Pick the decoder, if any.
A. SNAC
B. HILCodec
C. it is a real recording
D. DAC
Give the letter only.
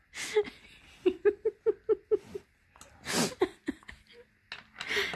C